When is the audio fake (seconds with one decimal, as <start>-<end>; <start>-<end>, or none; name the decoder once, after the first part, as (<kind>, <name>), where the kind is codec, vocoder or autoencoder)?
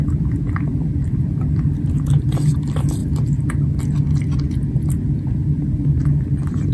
0.0-3.0 (vocoder, BigVGAN v2); 5.9-6.7